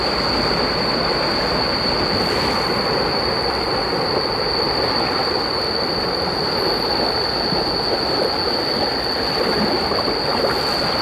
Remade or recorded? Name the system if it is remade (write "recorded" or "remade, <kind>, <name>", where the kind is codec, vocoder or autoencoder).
recorded